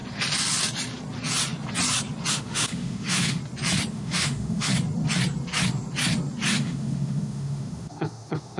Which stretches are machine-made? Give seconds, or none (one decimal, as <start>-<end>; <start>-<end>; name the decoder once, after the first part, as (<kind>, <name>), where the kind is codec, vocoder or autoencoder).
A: 2.3-3.4 (autoencoder, DAC-VAE); 3.9-4.7; 6.5-8.6